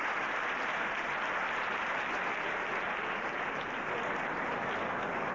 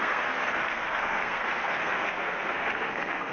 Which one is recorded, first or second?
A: first